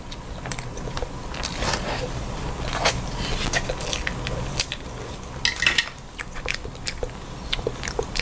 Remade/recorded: recorded